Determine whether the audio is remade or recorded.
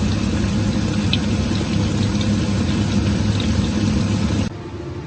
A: recorded